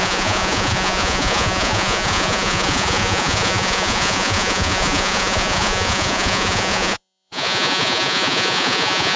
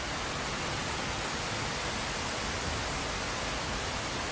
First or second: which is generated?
first